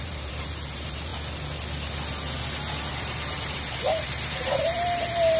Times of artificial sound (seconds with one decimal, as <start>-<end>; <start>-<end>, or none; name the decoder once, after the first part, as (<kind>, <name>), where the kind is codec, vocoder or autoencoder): 0.0-1.1 (vocoder, BigVGAN v2); 2.9-5.4